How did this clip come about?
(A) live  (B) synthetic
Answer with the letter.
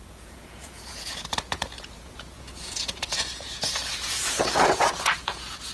B